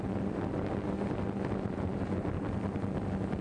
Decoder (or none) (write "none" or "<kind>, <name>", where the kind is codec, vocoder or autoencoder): none